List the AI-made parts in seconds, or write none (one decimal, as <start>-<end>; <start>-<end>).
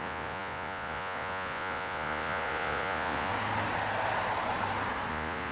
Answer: 0.0-3.3; 5.1-5.5